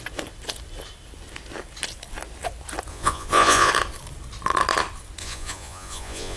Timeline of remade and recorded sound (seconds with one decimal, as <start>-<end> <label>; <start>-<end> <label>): 0.0-2.9 recorded; 2.9-3.7 remade; 3.7-5.2 recorded; 5.2-6.4 remade